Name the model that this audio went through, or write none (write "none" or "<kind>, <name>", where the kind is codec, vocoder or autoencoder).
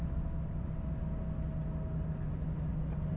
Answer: none